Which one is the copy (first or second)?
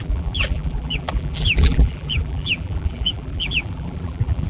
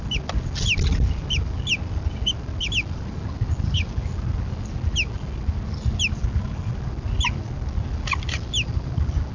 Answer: first